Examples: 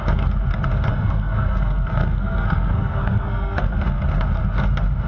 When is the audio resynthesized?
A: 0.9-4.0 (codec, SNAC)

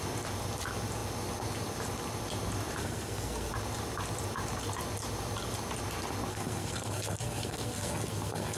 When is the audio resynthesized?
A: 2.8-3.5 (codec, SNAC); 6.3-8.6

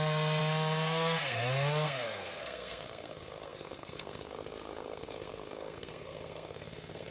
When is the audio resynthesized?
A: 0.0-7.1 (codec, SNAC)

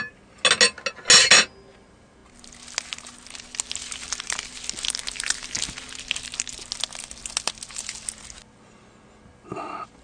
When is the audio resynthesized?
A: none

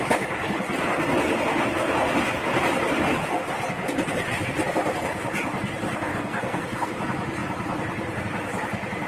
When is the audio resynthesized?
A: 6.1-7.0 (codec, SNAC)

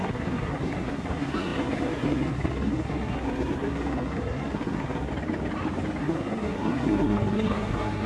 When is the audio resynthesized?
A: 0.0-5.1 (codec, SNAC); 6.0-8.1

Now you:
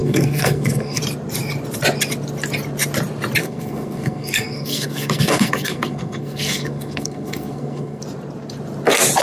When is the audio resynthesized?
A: 0.0-1.0 (codec, SNAC); 3.4-8.0

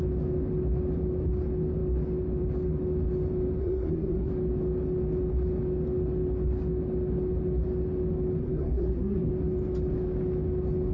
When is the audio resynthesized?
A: 3.6-4.3 (codec, SNAC); 8.4-9.3